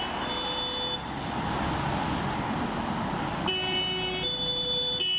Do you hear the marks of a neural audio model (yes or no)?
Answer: no